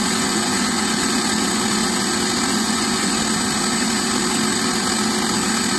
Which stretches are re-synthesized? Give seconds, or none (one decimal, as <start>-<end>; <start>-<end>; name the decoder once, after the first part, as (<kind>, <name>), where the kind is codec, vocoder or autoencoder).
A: 0.0-1.8 (vocoder, Vocos); 2.5-3.2